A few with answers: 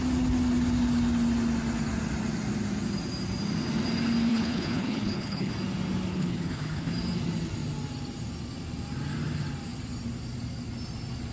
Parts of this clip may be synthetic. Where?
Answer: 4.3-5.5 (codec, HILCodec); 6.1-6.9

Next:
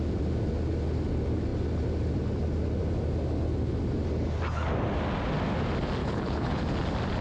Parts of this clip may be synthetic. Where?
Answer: 6.0-6.6 (codec, HILCodec)

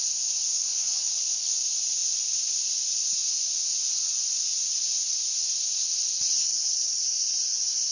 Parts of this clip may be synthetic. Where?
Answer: 0.5-1.5 (codec, HILCodec); 6.4-7.0

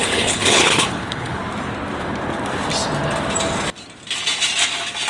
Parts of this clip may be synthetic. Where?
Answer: 0.0-1.4 (codec, HILCodec)

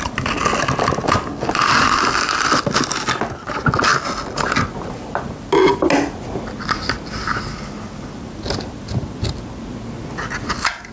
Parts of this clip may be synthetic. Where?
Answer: none